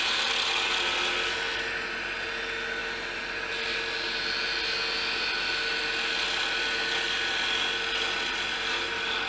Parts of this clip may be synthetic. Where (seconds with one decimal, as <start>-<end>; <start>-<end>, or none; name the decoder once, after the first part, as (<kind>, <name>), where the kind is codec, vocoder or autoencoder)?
none